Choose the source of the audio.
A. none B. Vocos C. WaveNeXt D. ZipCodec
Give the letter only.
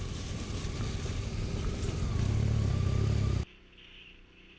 A